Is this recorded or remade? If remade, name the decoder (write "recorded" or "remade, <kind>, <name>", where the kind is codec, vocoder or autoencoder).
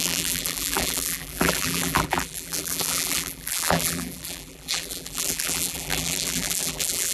remade, vocoder, BigVGAN v2